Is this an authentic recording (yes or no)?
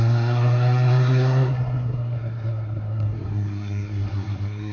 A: no